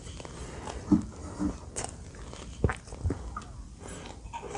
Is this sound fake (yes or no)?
no